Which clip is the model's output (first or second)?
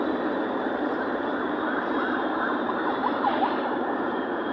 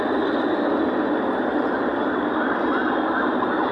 first